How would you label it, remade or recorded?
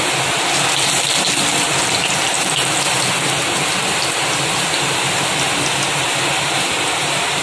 recorded